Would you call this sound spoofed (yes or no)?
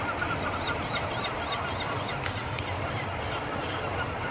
no